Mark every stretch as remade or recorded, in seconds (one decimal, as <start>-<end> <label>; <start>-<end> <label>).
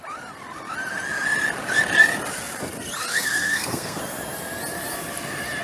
0.0-3.1 recorded; 3.1-4.0 remade; 4.0-5.6 recorded